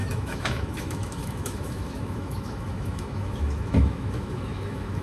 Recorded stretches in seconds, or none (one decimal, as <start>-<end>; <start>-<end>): none